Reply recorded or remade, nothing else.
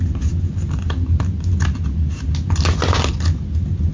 recorded